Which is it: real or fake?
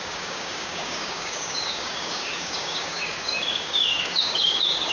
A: fake